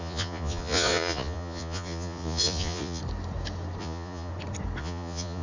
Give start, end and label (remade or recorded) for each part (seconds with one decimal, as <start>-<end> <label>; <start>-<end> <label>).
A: 0.0-3.0 remade; 3.0-3.8 recorded; 3.8-4.3 remade; 4.3-4.8 recorded; 4.8-5.4 remade